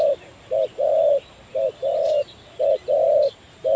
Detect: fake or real fake